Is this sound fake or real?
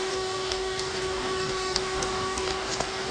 fake